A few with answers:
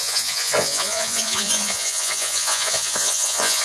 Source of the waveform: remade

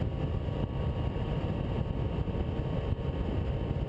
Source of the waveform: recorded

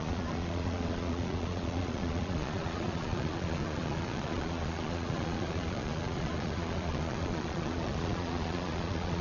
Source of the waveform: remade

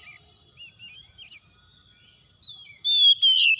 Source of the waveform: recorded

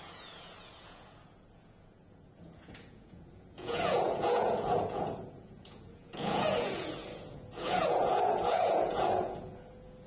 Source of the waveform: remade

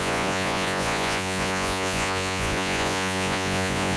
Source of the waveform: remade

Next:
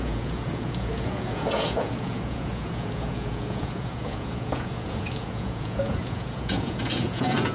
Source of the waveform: remade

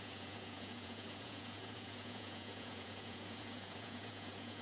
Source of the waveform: remade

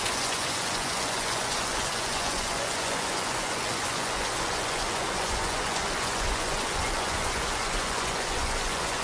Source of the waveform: remade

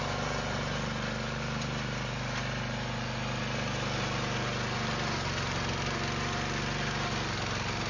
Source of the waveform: recorded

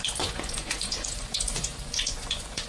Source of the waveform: remade